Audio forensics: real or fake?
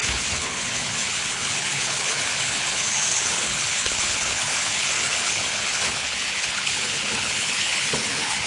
fake